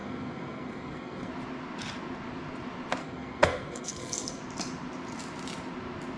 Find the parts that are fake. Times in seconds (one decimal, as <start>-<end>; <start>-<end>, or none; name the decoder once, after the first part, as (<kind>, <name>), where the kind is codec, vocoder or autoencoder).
0.0-1.3 (codec, SNAC); 3.0-4.4

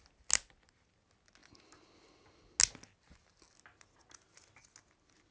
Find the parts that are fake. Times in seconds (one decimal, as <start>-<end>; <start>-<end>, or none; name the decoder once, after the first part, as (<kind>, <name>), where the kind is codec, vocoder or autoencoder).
none

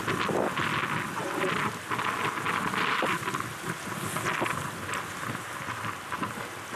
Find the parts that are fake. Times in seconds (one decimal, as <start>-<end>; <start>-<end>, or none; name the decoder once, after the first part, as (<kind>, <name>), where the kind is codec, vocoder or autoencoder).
none